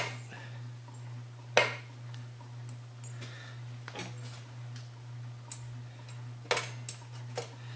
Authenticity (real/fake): real